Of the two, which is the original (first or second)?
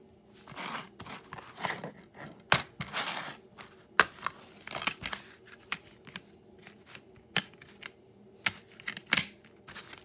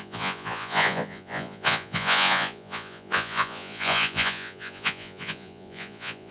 first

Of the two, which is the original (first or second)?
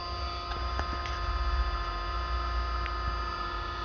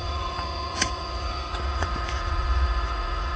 first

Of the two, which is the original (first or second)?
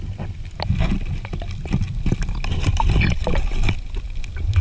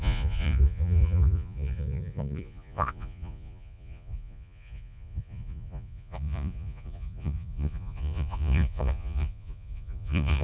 first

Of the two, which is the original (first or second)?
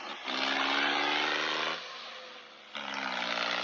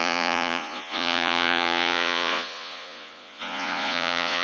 first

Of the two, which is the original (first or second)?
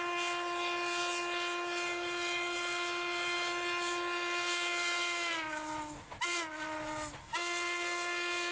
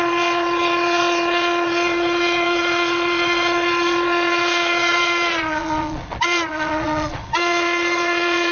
first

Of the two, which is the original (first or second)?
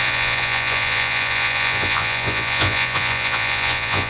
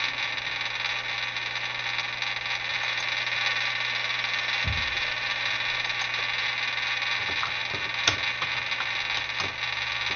second